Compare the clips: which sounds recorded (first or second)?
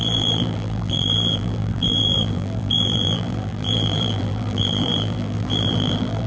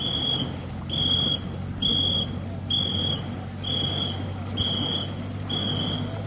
second